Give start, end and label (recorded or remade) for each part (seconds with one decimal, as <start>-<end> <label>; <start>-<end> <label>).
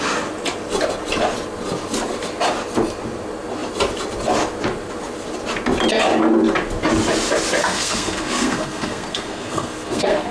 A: 0.0-7.6 recorded; 7.6-10.3 remade